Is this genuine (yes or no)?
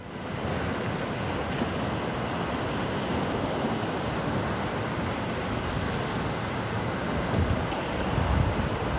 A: yes